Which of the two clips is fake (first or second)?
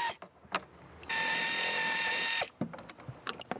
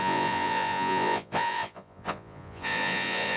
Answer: second